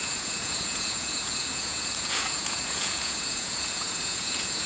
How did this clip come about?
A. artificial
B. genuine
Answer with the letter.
A